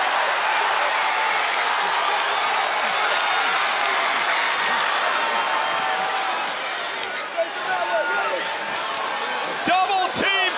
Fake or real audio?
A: real